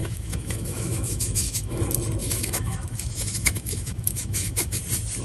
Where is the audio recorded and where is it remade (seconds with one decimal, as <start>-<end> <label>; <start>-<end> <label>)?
0.0-1.8 remade; 1.8-2.2 recorded; 2.2-4.8 remade; 4.8-5.2 recorded